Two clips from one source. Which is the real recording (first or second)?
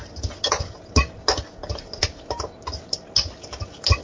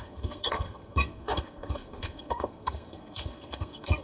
first